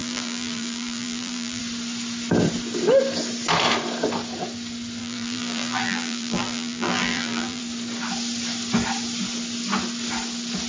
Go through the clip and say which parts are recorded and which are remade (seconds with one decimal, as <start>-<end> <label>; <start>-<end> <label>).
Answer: 0.0-1.6 remade; 1.6-5.0 recorded; 5.0-7.6 remade; 7.6-10.7 recorded